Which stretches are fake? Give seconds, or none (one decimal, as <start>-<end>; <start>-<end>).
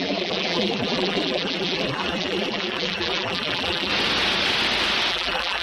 0.0-3.9; 5.1-5.6